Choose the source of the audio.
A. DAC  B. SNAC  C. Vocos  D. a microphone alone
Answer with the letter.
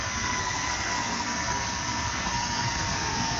B